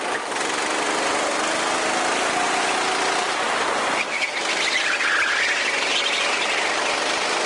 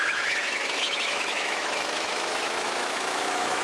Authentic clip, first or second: first